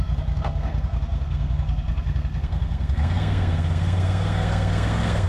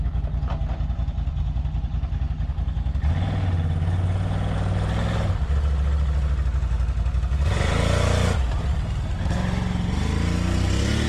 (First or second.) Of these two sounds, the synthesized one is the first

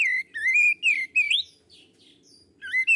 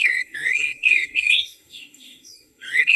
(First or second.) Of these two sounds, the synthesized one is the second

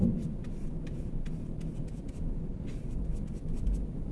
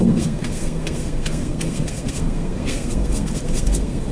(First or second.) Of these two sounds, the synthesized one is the second